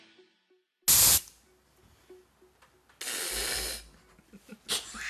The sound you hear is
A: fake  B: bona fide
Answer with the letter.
B